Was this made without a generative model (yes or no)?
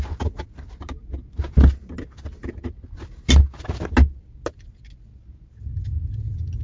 yes